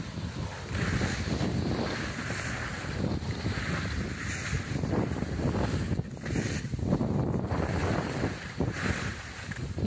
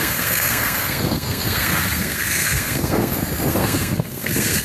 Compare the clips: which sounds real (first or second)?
first